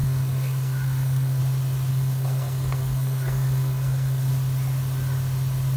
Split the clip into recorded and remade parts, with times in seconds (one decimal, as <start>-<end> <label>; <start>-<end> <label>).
0.0-1.4 remade; 1.4-1.9 recorded; 1.9-4.3 remade; 4.3-5.8 recorded